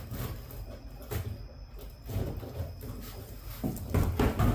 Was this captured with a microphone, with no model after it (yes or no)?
yes